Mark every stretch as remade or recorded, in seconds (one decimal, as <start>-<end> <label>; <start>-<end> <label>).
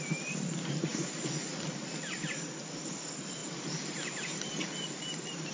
0.0-0.9 remade; 0.9-2.1 recorded; 2.1-3.4 remade; 3.4-5.0 recorded; 5.0-5.5 remade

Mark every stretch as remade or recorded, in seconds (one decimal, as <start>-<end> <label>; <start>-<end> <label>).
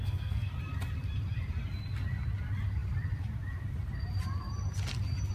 0.0-0.5 remade; 0.5-5.3 recorded